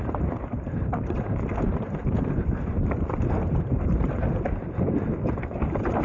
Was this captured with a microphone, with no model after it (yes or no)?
no